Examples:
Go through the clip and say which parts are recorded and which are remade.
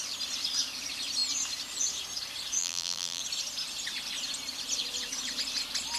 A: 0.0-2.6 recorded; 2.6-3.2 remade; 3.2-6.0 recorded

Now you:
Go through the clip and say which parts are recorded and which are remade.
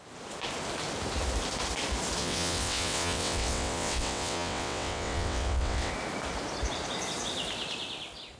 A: 0.0-2.2 recorded; 2.2-5.9 remade; 5.9-8.4 recorded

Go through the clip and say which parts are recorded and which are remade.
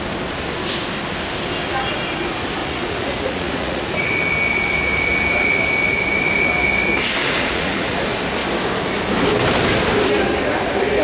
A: 0.0-2.6 recorded; 2.6-4.1 remade; 4.1-7.2 recorded; 7.2-8.0 remade; 8.0-11.0 recorded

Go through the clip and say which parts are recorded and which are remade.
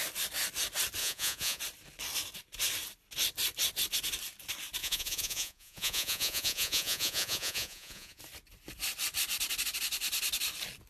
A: 0.0-1.0 recorded; 1.0-1.6 remade; 1.6-4.8 recorded; 4.8-8.2 remade; 8.2-10.9 recorded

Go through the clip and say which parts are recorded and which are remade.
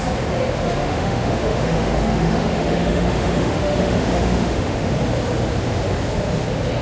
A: 0.0-0.8 recorded; 0.8-4.9 remade; 4.9-6.8 recorded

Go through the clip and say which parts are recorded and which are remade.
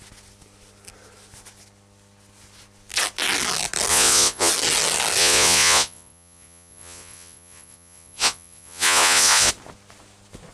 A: 0.0-3.9 recorded; 3.9-4.5 remade; 4.5-5.2 recorded; 5.2-9.5 remade; 9.5-10.5 recorded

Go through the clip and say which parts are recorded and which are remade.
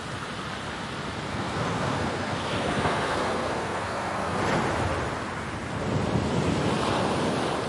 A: 0.0-1.3 recorded; 1.3-4.4 remade; 4.4-7.7 recorded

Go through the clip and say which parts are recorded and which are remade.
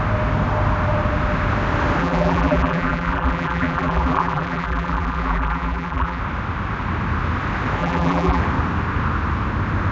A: 0.0-2.0 recorded; 2.0-6.2 remade; 6.2-7.8 recorded; 7.8-8.4 remade; 8.4-9.9 recorded